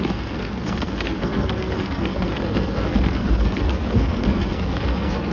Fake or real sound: fake